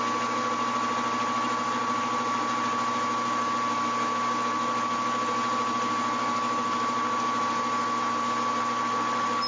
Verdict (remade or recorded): recorded